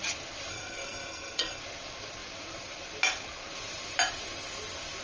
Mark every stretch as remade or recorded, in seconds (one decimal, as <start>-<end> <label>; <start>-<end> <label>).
0.0-0.5 recorded; 0.5-1.6 remade; 1.6-5.0 recorded